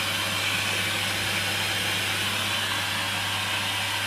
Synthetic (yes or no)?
no